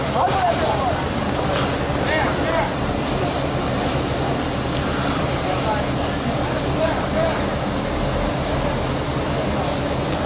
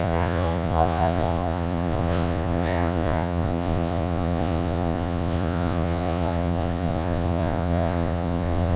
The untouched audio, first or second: first